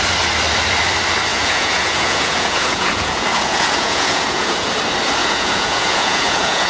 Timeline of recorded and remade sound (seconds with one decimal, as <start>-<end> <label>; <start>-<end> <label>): 0.0-1.3 recorded; 1.3-4.7 remade; 4.7-5.2 recorded; 5.2-6.7 remade